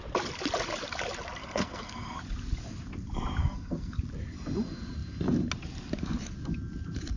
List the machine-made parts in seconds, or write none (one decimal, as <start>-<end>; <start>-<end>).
1.4-2.2; 3.4-4.0